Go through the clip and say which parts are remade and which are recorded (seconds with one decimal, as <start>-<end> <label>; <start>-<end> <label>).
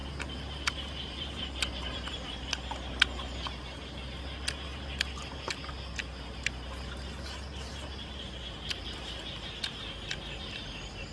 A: 0.0-2.5 remade; 2.5-7.7 recorded; 7.7-9.0 remade; 9.0-11.1 recorded